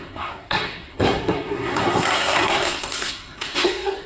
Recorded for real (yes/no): no